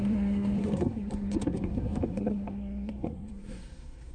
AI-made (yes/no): yes